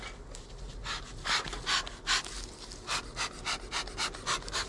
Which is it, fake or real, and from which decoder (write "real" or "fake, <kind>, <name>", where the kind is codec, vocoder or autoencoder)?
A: real